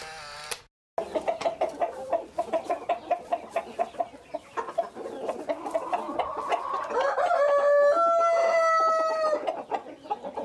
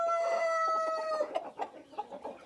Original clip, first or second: first